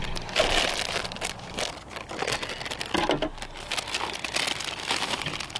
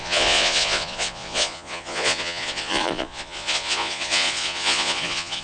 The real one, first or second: first